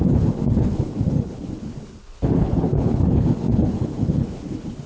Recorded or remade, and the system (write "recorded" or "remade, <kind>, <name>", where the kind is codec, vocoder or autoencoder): remade, codec, HILCodec